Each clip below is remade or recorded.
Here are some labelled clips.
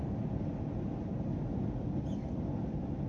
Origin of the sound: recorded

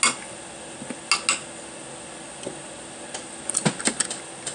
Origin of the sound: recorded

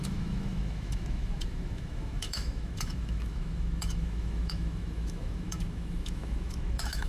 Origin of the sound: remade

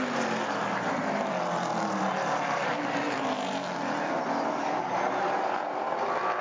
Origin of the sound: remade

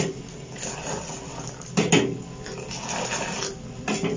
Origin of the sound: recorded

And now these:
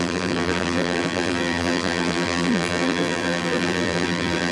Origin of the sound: remade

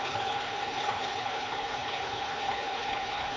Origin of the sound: remade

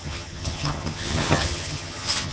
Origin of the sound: remade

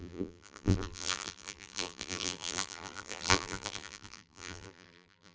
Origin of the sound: remade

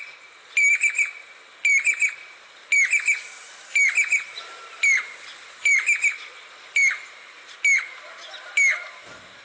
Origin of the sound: recorded